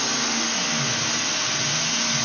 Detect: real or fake real